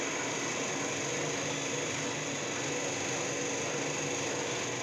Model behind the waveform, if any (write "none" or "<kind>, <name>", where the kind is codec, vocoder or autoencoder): none